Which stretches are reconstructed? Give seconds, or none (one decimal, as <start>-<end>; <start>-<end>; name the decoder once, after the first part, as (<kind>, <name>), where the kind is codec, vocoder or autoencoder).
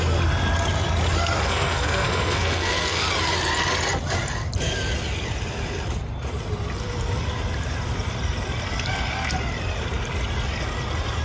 1.4-3.0 (codec, SNAC)